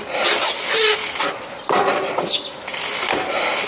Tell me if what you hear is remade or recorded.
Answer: recorded